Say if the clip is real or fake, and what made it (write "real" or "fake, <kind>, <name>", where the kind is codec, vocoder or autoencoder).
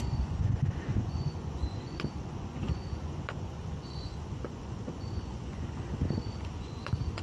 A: fake, vocoder, Vocos